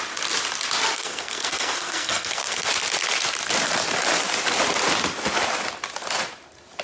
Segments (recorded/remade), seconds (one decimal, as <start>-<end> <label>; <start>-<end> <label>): 0.0-0.9 recorded; 0.9-2.7 remade; 2.7-6.8 recorded